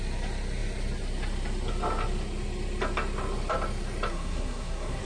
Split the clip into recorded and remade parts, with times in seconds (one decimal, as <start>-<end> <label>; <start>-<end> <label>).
0.0-4.1 recorded; 4.1-5.0 remade